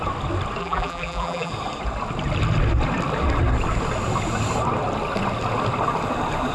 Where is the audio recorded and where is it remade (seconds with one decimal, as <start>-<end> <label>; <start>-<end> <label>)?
0.0-0.6 recorded; 0.6-1.5 remade; 1.5-6.5 recorded